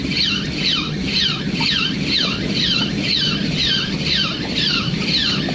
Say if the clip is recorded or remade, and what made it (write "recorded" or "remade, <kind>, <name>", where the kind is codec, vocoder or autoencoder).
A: recorded